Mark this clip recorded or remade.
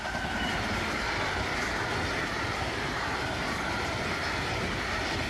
recorded